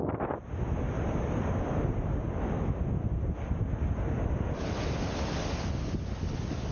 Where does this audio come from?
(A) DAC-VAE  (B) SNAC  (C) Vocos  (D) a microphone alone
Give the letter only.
D